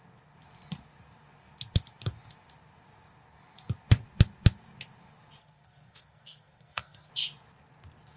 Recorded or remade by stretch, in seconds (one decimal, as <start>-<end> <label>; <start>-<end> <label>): 0.0-5.4 recorded; 5.4-7.1 remade; 7.1-8.2 recorded